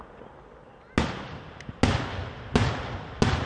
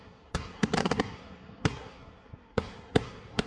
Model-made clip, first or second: second